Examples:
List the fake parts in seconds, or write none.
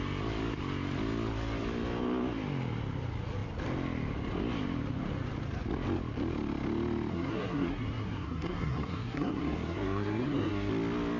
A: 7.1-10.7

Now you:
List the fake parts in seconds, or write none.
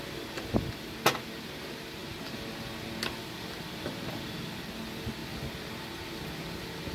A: none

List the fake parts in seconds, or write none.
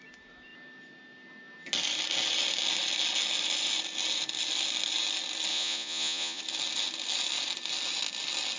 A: 5.5-6.4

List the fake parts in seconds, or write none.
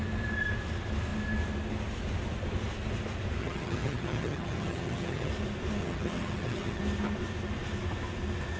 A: 3.4-5.3; 5.8-6.8